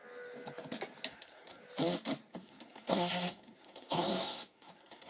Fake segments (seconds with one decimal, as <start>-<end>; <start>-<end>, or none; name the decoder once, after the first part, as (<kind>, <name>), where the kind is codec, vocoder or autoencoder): 1.1-1.6 (codec, SNAC); 2.3-5.1